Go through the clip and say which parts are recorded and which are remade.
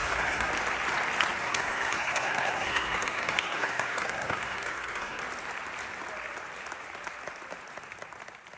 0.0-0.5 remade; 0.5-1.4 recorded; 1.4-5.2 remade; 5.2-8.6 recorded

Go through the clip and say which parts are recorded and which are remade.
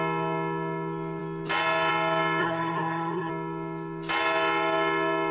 0.0-2.4 recorded; 2.4-3.3 remade; 3.3-5.3 recorded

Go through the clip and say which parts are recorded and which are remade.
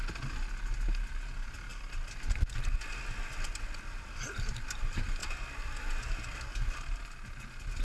0.0-7.8 recorded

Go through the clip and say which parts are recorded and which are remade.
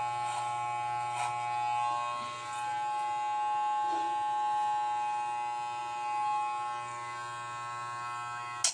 0.0-8.7 recorded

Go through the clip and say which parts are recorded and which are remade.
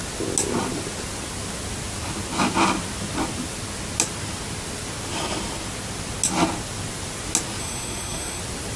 0.0-7.6 recorded; 7.6-8.4 remade; 8.4-8.8 recorded